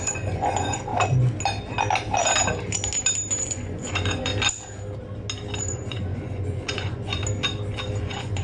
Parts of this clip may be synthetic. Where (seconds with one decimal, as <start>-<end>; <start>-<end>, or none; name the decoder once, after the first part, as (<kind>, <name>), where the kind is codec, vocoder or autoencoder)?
0.0-0.9 (vocoder, Vocos); 3.4-4.3; 5.6-7.2; 8.0-8.4